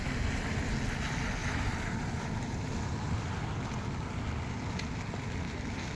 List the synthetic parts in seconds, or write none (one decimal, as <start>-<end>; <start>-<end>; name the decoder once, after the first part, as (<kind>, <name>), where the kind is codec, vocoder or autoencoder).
1.4-2.7 (vocoder, BigVGAN v2)

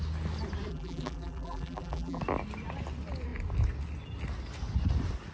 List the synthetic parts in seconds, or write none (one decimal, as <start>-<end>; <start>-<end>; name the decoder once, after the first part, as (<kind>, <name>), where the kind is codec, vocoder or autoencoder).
0.7-2.2 (vocoder, BigVGAN v2)

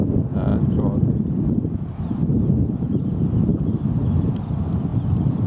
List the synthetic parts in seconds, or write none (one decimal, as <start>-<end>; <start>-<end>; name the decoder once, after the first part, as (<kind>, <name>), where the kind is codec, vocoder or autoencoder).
2.3-3.1 (vocoder, BigVGAN v2); 3.5-4.0; 4.9-5.5

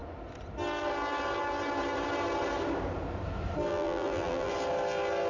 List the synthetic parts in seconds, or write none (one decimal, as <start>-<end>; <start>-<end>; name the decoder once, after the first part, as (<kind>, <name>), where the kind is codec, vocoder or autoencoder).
3.7-4.5 (vocoder, BigVGAN v2)

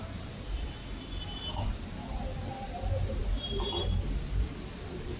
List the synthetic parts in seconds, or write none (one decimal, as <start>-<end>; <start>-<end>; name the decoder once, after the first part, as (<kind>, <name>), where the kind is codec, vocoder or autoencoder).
0.0-0.8 (vocoder, BigVGAN v2); 1.5-3.2; 4.4-5.2

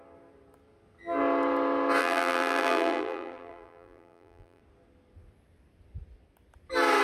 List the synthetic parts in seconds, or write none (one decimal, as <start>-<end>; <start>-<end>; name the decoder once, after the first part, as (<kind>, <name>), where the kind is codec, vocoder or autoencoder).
2.0-4.6 (vocoder, BigVGAN v2)